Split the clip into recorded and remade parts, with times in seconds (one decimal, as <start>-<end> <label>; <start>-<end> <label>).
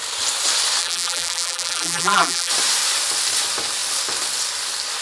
0.0-0.8 recorded; 0.8-2.5 remade; 2.5-5.0 recorded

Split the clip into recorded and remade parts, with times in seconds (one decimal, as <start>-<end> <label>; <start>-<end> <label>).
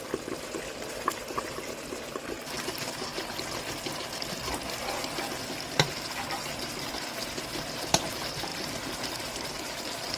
0.0-10.2 recorded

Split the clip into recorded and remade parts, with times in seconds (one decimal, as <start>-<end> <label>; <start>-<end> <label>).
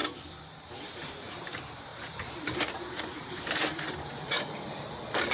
0.0-0.7 recorded; 0.7-5.3 remade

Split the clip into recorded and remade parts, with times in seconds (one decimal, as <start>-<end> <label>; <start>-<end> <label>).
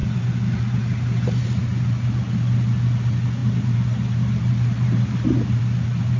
0.0-6.2 recorded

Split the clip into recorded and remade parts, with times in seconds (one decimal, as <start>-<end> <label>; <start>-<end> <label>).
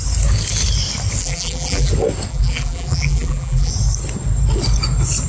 0.0-1.2 recorded; 1.2-1.9 remade; 1.9-2.3 recorded; 2.3-3.7 remade; 3.7-5.3 recorded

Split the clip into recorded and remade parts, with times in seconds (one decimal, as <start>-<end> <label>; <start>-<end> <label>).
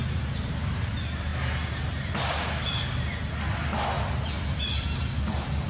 0.0-0.9 remade; 0.9-5.7 recorded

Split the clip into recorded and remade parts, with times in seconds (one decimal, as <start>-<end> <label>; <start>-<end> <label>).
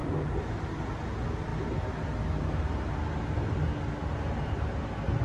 0.0-5.2 recorded